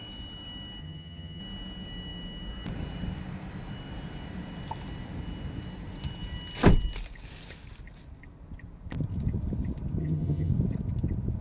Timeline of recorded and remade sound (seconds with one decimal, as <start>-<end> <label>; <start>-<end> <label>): 0.0-0.8 recorded; 0.8-1.4 remade; 1.4-10.0 recorded; 10.0-10.5 remade; 10.5-11.4 recorded